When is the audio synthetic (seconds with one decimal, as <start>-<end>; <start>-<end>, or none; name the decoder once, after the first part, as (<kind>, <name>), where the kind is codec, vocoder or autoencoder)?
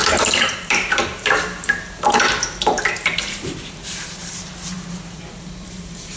0.0-3.5 (vocoder, BigVGAN v2); 4.2-6.2